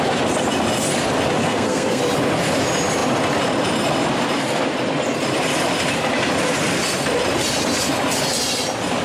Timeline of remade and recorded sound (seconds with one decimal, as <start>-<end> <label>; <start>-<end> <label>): 0.0-1.4 recorded; 1.4-2.0 remade; 2.0-9.0 recorded